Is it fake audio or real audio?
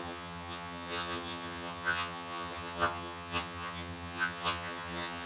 fake